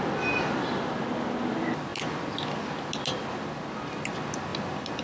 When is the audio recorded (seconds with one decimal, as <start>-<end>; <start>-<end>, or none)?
0.0-5.0